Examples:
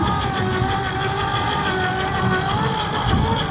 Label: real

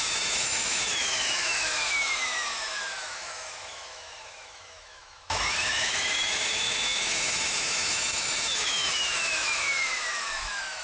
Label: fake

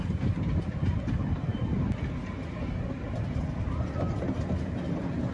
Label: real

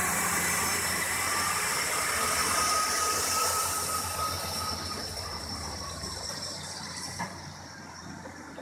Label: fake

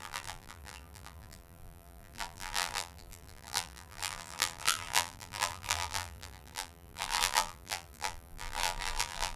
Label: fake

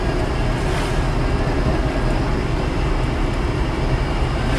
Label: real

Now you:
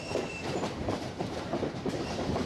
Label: fake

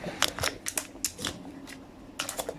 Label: real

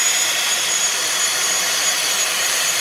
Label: fake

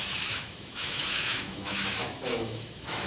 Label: fake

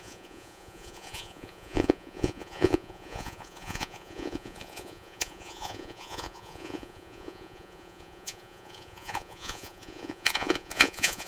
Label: fake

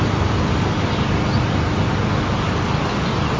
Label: real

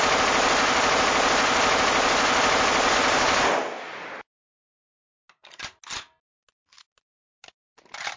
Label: real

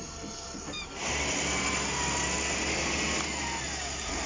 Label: real